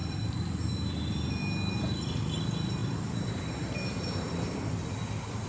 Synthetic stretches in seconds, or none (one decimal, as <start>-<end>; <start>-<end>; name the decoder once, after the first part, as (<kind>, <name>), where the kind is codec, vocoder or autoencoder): 0.0-0.6 (vocoder, BigVGAN v2); 2.8-4.3